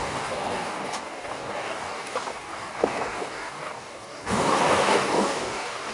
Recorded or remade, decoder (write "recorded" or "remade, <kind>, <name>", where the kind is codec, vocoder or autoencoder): remade, codec, DAC